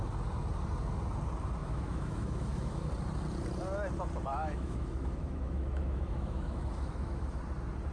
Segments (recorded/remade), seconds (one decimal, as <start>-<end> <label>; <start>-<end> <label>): 0.0-1.6 recorded; 1.6-2.9 remade; 2.9-4.3 recorded; 4.3-7.4 remade; 7.4-7.9 recorded